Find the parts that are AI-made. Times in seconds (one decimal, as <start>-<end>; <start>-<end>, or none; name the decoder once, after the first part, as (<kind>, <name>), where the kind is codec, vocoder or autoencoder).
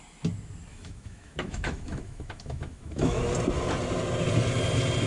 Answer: 0.7-3.2 (autoencoder, DAC-VAE)